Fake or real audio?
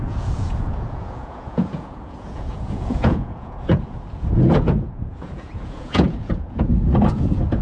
fake